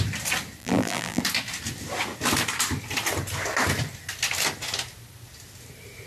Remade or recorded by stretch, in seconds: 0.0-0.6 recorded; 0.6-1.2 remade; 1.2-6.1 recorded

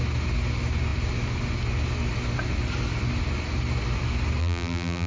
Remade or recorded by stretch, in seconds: 0.0-4.4 recorded; 4.4-5.1 remade

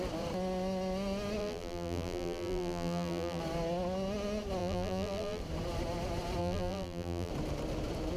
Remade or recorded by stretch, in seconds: 0.0-1.4 recorded; 1.4-3.4 remade; 3.4-4.6 recorded; 4.6-5.4 remade; 5.4-6.4 recorded; 6.4-7.3 remade; 7.3-8.2 recorded

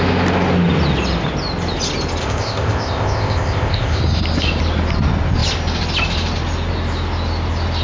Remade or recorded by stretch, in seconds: 0.0-2.2 recorded; 2.2-4.0 remade; 4.0-7.8 recorded

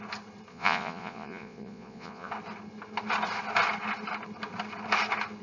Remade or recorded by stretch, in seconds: 0.0-0.5 recorded; 0.5-2.3 remade; 2.3-5.4 recorded

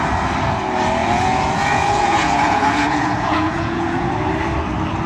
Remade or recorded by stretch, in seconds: 0.0-1.0 recorded; 1.0-4.1 remade; 4.1-5.1 recorded